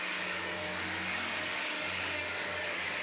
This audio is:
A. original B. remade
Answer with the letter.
B